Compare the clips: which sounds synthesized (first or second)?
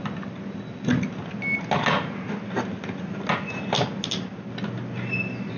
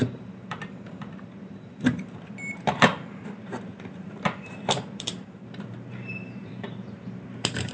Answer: second